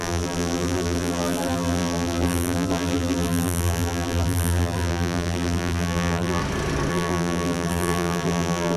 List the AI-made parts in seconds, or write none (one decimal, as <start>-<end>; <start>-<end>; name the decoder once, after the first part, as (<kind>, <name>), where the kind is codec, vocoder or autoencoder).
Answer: 0.0-6.4 (vocoder, BigVGAN v2); 6.9-8.8